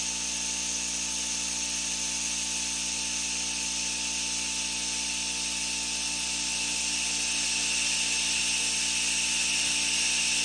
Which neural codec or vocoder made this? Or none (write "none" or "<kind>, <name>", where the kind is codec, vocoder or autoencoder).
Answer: none